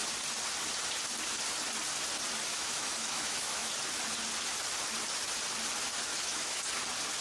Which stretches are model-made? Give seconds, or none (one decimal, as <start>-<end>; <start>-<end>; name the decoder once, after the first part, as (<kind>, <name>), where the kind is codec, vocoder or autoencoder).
2.5-3.7 (autoencoder, DAC-VAE); 6.1-6.6